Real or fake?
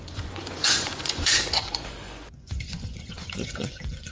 fake